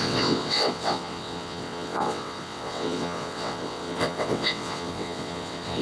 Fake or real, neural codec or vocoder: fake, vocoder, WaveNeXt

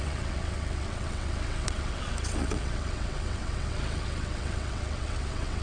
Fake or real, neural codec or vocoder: fake, vocoder, WaveNeXt